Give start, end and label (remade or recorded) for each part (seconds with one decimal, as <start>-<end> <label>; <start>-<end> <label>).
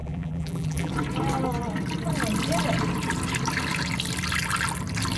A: 0.0-0.9 remade; 0.9-5.2 recorded